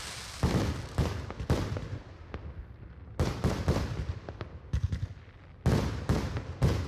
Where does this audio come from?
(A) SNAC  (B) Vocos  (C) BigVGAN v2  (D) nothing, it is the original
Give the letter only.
D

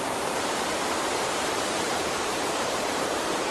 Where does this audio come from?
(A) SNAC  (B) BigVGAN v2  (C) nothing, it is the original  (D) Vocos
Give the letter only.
B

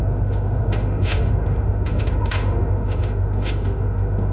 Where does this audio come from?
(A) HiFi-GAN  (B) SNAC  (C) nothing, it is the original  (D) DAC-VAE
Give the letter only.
D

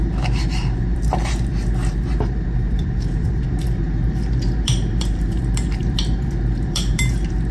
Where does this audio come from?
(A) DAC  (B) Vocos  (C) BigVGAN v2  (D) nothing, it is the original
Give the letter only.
C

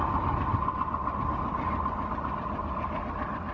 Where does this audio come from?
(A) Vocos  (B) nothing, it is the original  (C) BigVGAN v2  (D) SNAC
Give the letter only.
B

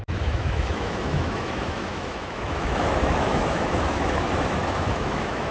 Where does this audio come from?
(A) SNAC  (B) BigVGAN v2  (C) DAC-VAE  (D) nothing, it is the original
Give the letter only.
C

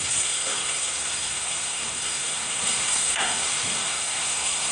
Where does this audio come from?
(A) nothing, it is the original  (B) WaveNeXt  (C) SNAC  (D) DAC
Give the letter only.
C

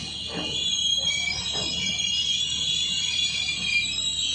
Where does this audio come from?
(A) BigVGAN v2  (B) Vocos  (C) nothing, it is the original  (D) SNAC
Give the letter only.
C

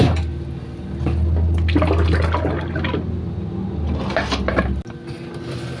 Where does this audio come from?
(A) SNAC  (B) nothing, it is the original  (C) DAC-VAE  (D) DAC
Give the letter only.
B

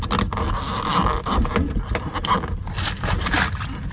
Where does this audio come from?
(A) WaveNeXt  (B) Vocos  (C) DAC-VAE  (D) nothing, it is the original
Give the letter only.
D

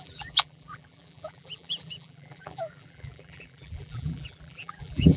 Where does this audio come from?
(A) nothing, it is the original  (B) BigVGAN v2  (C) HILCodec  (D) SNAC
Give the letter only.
B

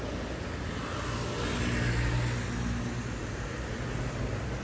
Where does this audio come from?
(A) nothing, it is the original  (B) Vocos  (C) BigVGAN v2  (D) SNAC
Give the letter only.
A